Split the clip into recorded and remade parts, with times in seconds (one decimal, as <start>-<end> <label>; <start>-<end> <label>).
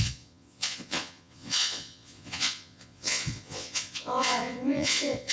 0.0-5.3 remade